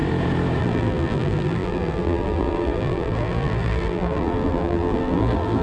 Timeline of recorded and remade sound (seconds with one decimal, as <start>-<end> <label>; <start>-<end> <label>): 0.0-0.6 recorded; 0.6-5.6 remade